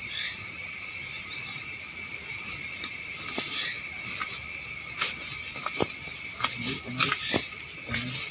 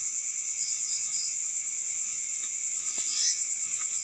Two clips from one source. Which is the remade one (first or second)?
second